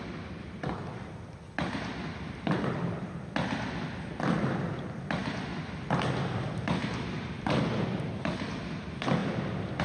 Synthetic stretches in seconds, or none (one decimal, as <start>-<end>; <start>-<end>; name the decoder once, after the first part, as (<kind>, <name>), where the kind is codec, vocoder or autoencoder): none